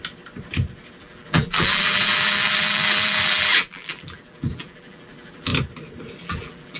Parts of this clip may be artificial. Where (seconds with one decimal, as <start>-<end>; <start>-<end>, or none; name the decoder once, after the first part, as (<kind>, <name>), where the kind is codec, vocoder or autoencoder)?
1.0-5.5 (vocoder, BigVGAN v2); 6.2-6.8